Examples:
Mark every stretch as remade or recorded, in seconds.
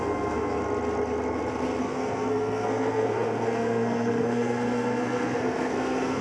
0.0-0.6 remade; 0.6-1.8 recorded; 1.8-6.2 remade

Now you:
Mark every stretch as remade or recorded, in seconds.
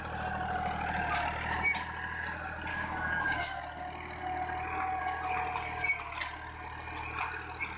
0.0-2.7 recorded; 2.7-3.6 remade; 3.6-7.8 recorded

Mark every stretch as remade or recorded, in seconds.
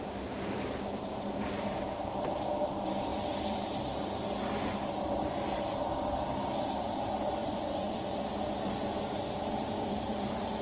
0.0-7.4 recorded; 7.4-8.0 remade; 8.0-10.6 recorded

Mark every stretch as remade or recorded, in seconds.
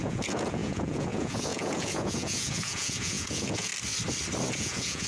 0.0-3.7 remade; 3.7-4.5 recorded; 4.5-5.1 remade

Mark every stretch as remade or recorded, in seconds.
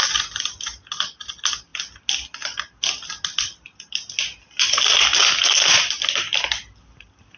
0.0-7.4 recorded